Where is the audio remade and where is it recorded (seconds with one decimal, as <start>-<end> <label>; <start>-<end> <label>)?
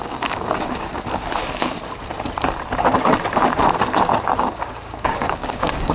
0.0-0.9 remade; 0.9-4.4 recorded; 4.4-5.9 remade